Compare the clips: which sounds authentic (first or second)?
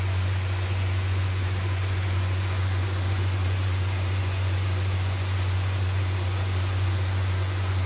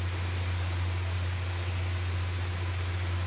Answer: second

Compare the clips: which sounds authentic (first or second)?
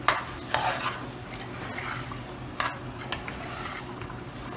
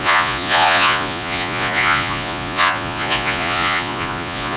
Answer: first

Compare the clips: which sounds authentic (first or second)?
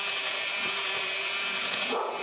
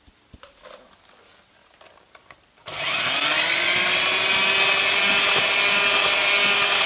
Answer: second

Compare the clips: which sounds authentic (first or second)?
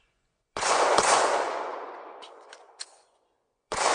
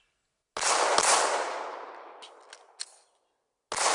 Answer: second